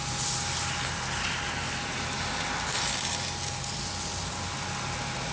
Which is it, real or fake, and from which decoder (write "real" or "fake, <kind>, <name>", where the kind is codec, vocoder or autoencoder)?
real